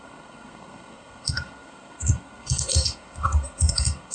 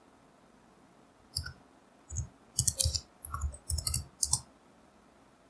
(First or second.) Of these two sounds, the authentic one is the second